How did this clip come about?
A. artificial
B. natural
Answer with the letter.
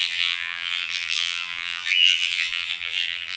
A